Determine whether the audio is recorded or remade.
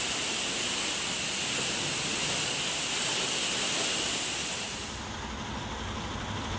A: recorded